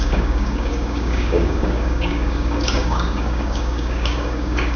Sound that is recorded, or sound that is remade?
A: remade